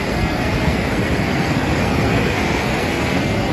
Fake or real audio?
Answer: fake